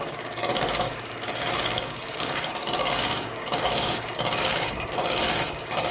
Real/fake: fake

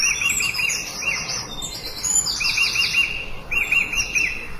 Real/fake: real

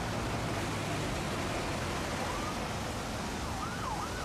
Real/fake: real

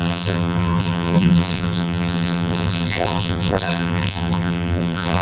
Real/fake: fake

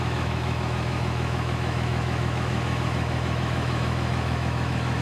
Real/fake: fake